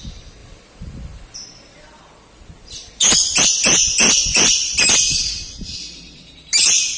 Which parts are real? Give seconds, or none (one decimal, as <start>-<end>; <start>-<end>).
none